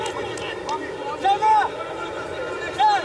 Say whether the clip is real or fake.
real